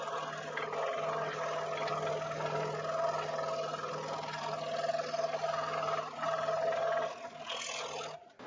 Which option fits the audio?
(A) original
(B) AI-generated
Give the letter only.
A